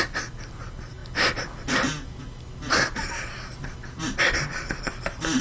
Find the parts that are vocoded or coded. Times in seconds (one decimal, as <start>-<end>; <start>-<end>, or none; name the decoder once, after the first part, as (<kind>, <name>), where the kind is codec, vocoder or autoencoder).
none